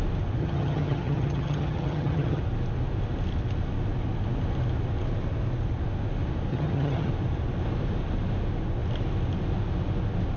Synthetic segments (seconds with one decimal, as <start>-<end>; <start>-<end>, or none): 0.4-2.4; 6.5-7.1